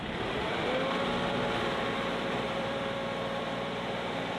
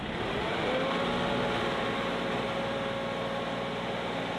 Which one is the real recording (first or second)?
second